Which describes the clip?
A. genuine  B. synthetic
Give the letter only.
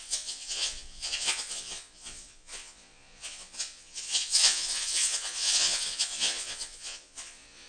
B